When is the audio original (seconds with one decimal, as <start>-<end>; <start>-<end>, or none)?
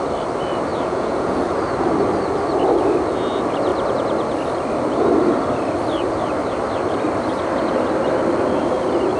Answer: 0.0-0.7; 1.4-9.2